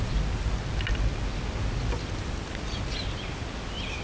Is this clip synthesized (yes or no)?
no